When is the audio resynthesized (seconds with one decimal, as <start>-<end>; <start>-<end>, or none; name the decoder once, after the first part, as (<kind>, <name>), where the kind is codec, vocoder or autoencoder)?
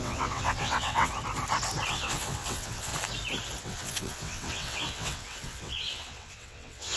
0.0-1.1 (vocoder, WaveNeXt); 1.9-2.9; 3.6-7.0